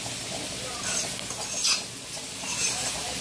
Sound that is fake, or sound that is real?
real